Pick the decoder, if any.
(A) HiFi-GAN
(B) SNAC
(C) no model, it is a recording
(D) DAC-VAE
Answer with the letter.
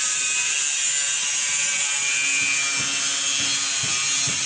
C